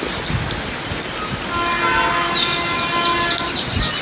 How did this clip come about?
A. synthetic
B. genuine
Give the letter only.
B